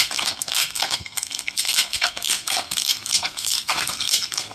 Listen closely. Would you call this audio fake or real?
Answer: fake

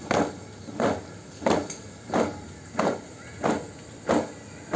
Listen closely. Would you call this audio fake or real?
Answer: real